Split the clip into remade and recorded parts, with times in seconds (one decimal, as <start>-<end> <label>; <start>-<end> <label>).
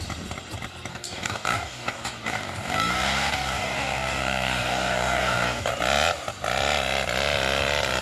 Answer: 0.0-0.9 recorded; 0.9-5.7 remade; 5.7-8.0 recorded